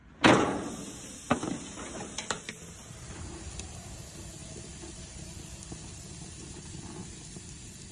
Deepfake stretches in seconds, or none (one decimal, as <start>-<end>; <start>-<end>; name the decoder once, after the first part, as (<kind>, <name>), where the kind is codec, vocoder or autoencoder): none